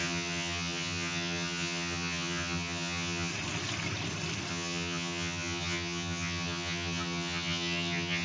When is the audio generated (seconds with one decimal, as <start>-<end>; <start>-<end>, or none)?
0.0-3.3; 4.5-8.2

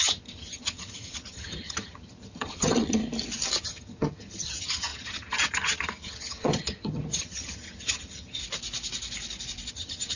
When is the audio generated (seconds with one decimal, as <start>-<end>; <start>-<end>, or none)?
0.0-3.0; 3.6-8.4; 9.7-10.2

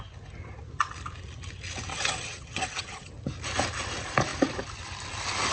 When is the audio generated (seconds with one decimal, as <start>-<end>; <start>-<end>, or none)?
1.9-3.1

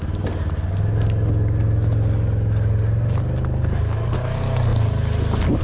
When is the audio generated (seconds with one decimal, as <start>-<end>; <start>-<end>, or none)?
none

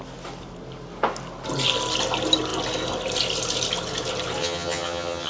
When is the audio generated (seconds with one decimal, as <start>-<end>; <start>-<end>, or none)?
4.4-5.3

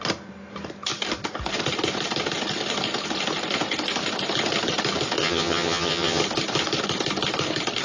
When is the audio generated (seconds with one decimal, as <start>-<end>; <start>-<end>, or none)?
5.2-6.2

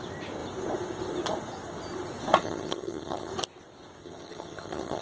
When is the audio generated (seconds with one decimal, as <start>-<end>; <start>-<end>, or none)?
2.4-3.3; 4.0-5.0